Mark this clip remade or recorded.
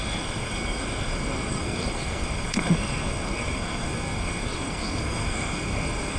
remade